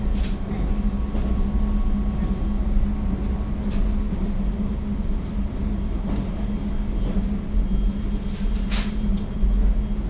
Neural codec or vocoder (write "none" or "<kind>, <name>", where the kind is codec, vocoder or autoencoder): none